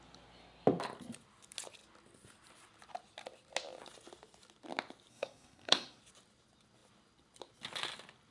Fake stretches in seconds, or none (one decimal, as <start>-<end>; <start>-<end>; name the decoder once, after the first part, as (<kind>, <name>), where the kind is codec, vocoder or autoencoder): 5.1-6.0 (codec, SNAC)